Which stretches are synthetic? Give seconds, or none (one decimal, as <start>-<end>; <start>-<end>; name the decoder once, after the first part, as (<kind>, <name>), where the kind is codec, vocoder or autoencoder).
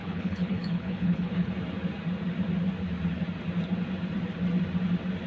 0.0-1.5 (codec, HILCodec)